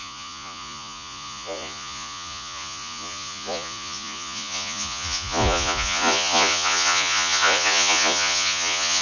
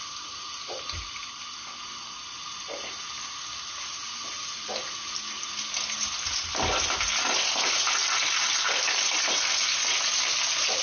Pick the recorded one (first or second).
second